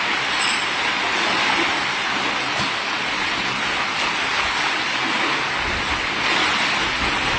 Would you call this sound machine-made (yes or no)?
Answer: no